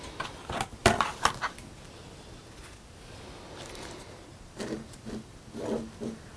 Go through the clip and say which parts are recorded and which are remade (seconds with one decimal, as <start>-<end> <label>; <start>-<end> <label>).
0.0-0.8 recorded; 0.8-2.0 remade; 2.0-6.4 recorded